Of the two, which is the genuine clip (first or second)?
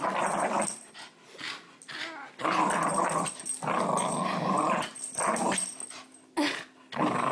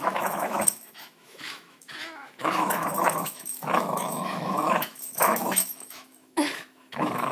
first